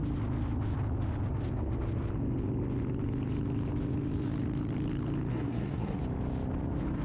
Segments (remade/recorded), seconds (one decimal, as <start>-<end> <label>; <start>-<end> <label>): 0.0-5.3 recorded; 5.3-6.0 remade; 6.0-7.0 recorded